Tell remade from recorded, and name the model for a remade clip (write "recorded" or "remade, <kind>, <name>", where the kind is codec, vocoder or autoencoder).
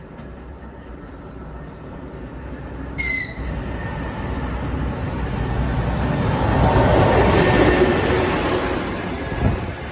recorded